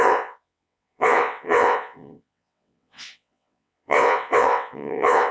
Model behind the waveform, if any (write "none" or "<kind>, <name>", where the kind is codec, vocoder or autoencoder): vocoder, WaveNeXt